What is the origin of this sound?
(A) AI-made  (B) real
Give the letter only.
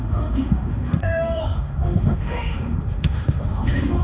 A